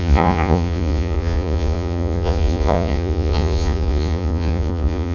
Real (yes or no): no